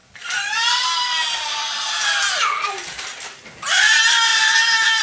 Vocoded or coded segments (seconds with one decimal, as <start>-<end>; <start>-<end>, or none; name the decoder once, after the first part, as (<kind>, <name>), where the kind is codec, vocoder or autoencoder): none